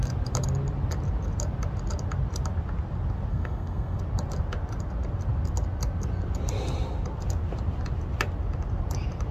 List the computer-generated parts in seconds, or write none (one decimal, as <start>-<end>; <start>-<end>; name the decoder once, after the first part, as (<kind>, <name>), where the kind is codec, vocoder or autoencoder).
3.3-4.0 (codec, SNAC)

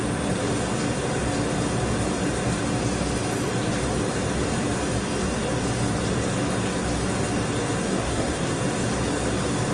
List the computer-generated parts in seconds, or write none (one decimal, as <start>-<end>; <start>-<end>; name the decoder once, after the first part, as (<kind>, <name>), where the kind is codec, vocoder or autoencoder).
7.8-8.6 (codec, SNAC)